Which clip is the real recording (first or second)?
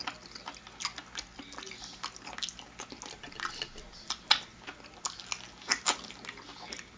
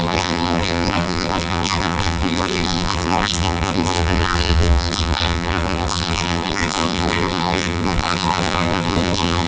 first